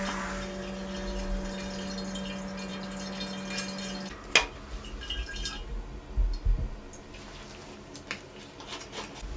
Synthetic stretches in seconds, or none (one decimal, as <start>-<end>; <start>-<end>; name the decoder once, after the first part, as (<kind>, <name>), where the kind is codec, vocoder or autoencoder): none